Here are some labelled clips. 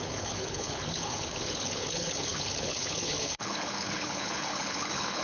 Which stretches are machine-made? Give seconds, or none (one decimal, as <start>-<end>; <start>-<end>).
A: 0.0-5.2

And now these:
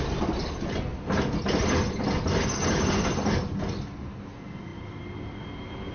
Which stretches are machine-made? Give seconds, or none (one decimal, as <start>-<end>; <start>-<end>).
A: none

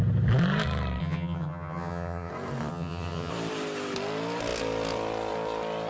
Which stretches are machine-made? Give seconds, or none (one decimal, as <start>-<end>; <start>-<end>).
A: 1.0-2.3; 2.7-3.3

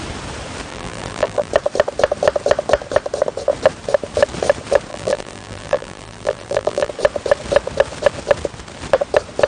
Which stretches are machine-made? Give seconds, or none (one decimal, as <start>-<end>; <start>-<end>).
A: 0.7-1.5; 4.9-6.9